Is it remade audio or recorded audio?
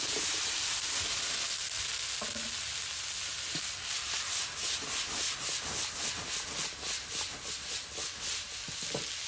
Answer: recorded